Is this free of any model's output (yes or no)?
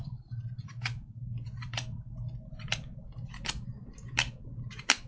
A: no